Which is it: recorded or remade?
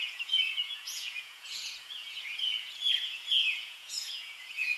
remade